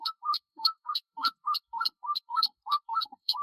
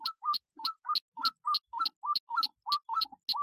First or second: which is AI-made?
first